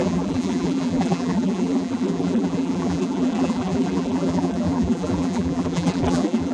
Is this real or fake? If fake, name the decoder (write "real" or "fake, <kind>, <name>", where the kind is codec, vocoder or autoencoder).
fake, vocoder, BigVGAN v2